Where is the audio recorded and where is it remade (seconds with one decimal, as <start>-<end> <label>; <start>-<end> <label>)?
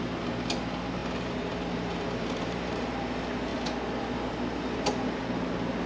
0.0-1.0 recorded; 1.0-2.9 remade; 2.9-5.9 recorded